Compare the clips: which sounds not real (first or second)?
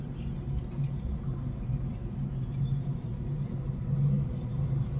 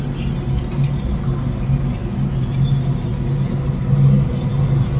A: first